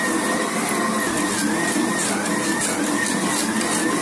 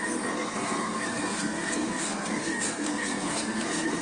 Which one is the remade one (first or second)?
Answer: second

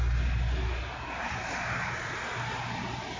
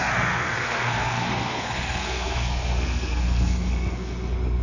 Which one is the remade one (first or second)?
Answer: second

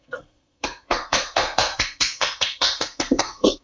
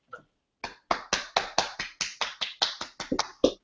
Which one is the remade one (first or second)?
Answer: first